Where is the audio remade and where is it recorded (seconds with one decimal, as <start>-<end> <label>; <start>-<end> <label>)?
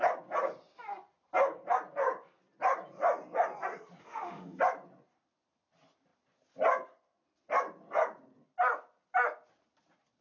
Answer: 0.0-4.0 recorded; 4.0-4.6 remade; 4.6-10.2 recorded